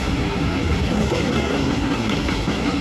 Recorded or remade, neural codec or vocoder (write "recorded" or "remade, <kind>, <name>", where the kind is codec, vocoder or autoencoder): remade, codec, SNAC